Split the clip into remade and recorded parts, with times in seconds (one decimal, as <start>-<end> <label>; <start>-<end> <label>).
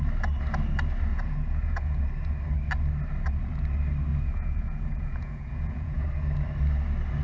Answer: 0.0-1.1 recorded; 1.1-2.0 remade; 2.0-4.1 recorded; 4.1-6.1 remade; 6.1-7.2 recorded